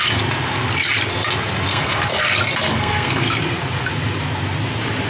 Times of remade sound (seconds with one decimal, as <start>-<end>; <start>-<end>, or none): 1.7-2.2; 2.7-3.2